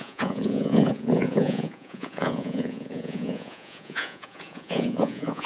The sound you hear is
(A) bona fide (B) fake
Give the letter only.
B